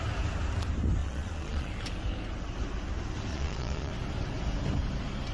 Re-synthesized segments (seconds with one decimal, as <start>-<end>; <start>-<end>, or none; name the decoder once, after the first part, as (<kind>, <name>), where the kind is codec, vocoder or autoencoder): 1.0-1.7 (vocoder, Vocos); 3.3-3.9